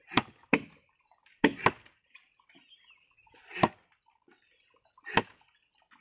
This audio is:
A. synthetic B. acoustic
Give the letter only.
B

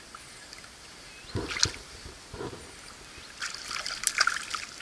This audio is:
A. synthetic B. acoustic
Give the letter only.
B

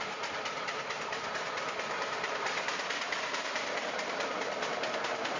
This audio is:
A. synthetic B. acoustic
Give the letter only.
A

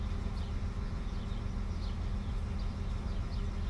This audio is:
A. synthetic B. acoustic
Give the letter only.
B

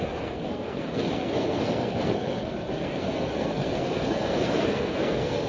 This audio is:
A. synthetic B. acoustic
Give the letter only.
A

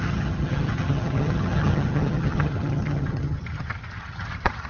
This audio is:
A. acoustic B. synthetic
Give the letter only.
B